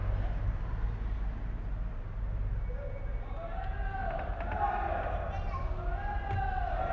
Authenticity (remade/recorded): recorded